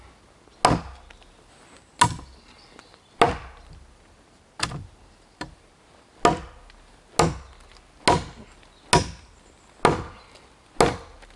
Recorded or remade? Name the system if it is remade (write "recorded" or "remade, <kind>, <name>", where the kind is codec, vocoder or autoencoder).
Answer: recorded